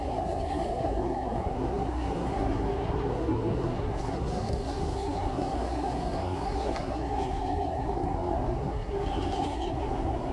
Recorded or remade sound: remade